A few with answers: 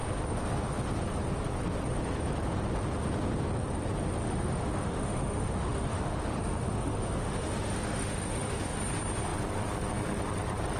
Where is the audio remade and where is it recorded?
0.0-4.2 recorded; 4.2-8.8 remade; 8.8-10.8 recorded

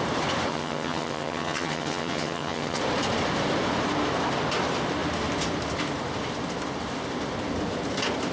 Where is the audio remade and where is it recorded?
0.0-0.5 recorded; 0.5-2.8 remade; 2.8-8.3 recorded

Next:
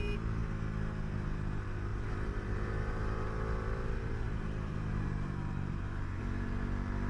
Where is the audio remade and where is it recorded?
0.0-1.9 recorded; 1.9-6.2 remade; 6.2-7.1 recorded